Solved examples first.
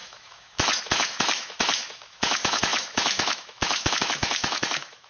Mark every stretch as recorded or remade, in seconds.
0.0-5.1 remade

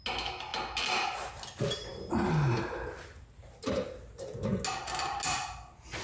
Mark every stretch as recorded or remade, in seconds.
0.0-6.0 recorded

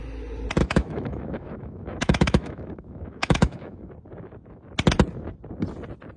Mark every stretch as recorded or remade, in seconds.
0.0-0.6 recorded; 0.6-3.9 remade; 3.9-6.2 recorded

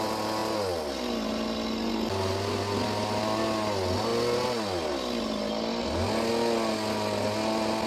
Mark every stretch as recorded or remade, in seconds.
0.0-7.9 recorded

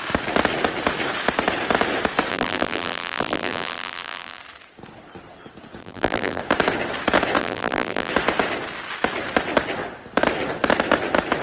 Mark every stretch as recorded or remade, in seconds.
0.0-2.3 recorded; 2.3-4.4 remade; 4.4-5.8 recorded; 5.8-6.4 remade; 6.4-7.4 recorded; 7.4-8.1 remade; 8.1-11.4 recorded

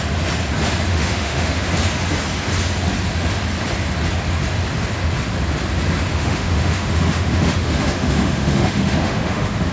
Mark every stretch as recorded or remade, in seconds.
0.0-0.9 recorded; 0.9-1.7 remade; 1.7-6.1 recorded; 6.1-9.7 remade